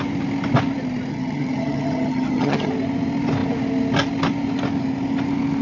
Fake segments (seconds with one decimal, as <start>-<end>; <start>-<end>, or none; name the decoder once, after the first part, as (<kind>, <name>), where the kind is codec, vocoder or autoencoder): 1.1-2.7 (vocoder, HiFi-GAN)